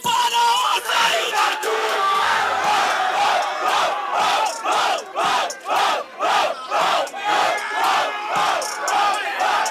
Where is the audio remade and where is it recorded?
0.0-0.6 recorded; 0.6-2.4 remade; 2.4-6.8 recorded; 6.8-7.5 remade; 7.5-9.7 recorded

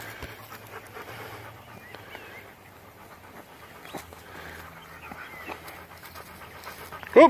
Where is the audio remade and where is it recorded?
0.0-7.3 recorded